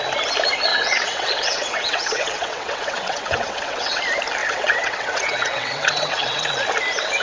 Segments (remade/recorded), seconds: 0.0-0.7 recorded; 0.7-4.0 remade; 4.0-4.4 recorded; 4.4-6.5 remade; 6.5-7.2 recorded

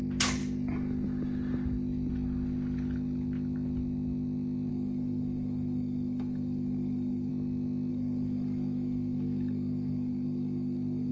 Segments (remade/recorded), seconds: 0.0-4.7 recorded; 4.7-7.3 remade; 7.3-7.9 recorded; 7.9-11.1 remade

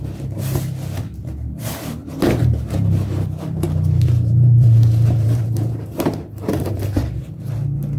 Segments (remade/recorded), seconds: 0.0-2.0 recorded; 2.0-6.8 remade; 6.8-8.0 recorded

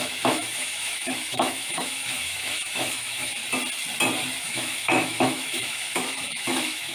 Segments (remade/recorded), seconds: 0.0-3.4 remade; 3.4-4.4 recorded; 4.4-6.9 remade

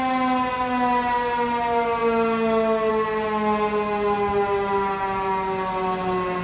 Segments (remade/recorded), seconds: 0.0-6.4 recorded

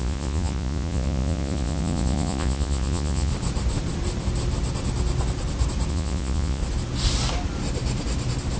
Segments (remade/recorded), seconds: 0.0-3.3 remade; 3.3-5.9 recorded; 5.9-6.6 remade; 6.6-8.6 recorded